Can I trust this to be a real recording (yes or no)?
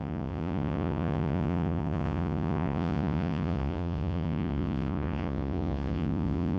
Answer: no